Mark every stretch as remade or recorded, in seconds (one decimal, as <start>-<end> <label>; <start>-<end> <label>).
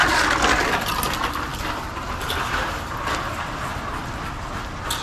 0.0-1.5 recorded; 1.5-3.2 remade; 3.2-3.7 recorded; 3.7-4.2 remade; 4.2-5.0 recorded